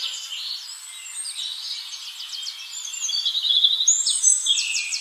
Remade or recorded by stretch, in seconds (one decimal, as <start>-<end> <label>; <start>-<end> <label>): 0.0-5.0 recorded